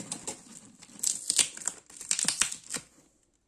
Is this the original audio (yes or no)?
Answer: yes